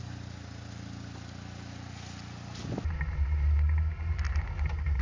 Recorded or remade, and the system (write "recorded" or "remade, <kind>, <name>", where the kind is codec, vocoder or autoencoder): recorded